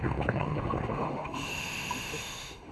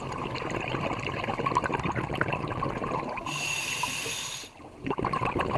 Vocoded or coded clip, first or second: first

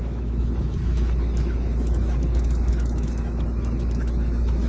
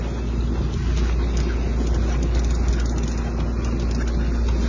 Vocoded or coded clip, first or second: first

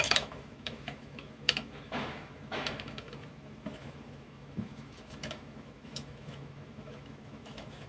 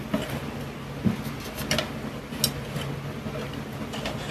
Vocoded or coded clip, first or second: first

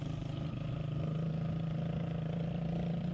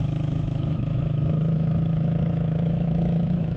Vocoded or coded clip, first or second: second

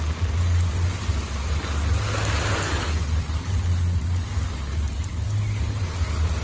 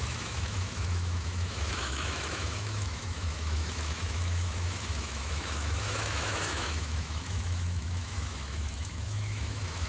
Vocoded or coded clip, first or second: second